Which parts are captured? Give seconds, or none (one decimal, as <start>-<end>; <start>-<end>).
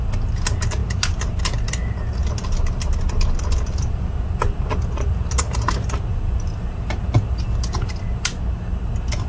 0.0-9.3